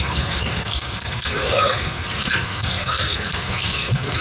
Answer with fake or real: fake